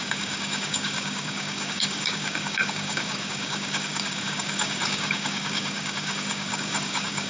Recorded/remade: remade